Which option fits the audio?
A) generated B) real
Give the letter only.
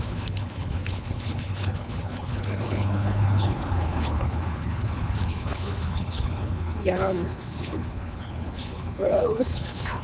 A